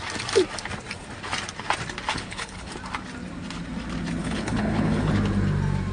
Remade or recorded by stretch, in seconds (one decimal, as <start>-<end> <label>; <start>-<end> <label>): 0.0-2.1 recorded; 2.1-2.7 remade; 2.7-4.2 recorded; 4.2-5.1 remade; 5.1-5.9 recorded